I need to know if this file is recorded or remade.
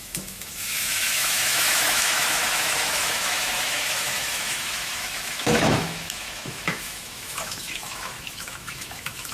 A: remade